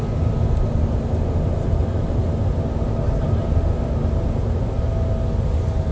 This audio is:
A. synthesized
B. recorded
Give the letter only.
B